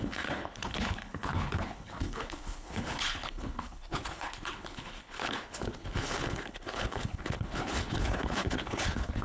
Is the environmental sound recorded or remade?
remade